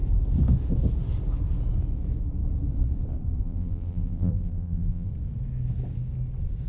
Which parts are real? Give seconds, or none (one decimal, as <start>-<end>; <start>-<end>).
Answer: 0.0-3.4; 5.1-6.7